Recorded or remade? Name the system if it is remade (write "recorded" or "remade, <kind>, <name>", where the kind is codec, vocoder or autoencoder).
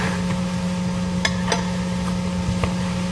remade, vocoder, BigVGAN v2